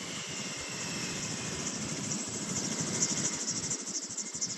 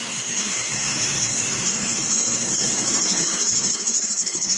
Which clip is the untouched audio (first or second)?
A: first